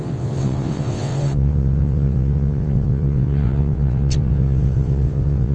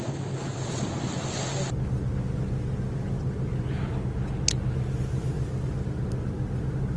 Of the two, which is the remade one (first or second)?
first